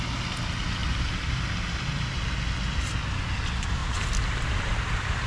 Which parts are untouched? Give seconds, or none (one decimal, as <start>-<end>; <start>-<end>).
0.0-0.8; 2.2-3.8